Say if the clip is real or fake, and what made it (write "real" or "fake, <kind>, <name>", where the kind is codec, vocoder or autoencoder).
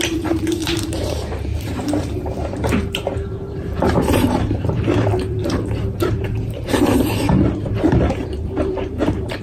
fake, vocoder, BigVGAN v2